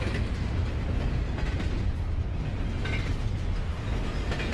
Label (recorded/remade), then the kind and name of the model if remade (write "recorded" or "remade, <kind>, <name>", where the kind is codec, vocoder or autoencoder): recorded